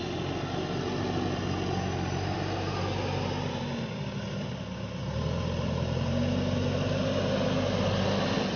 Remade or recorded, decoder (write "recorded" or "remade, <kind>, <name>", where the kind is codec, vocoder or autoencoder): recorded